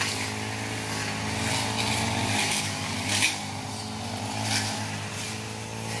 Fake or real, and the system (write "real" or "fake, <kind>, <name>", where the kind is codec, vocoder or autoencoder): real